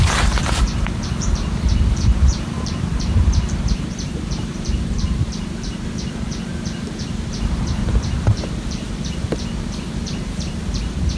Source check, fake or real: fake